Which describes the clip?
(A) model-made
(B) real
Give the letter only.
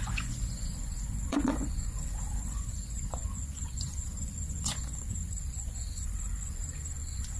A